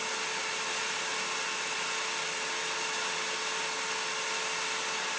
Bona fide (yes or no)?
yes